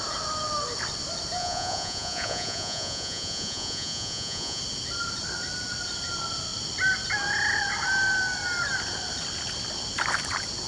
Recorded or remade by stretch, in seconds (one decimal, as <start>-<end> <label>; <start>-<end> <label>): 0.0-1.4 recorded; 1.4-4.6 remade; 4.6-10.7 recorded